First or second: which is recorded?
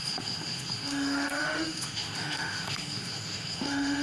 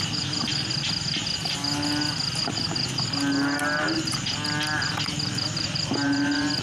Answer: second